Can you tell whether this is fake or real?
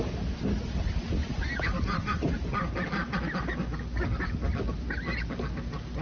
real